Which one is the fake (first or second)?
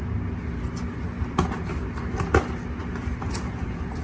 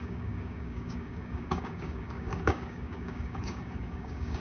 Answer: second